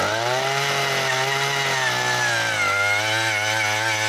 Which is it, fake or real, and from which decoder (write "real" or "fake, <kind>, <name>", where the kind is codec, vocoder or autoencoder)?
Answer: real